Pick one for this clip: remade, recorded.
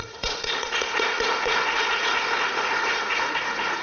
remade